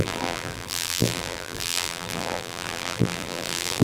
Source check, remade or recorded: remade